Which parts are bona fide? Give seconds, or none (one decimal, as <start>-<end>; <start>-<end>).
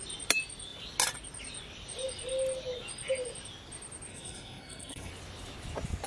0.0-4.1; 5.1-6.1